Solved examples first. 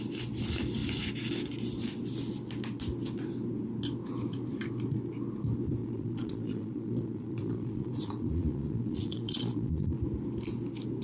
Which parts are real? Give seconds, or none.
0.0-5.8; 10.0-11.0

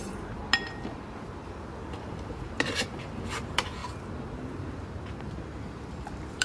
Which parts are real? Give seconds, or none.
0.4-2.1; 3.8-5.6